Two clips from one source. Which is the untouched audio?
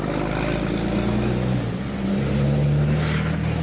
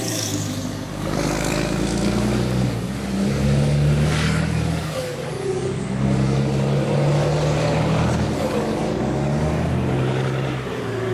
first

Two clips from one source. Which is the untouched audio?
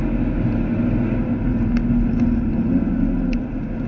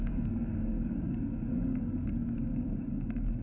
first